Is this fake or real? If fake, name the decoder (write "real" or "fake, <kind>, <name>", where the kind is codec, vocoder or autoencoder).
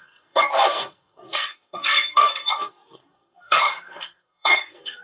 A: fake, codec, SNAC